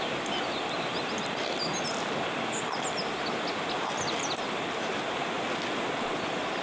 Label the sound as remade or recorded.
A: recorded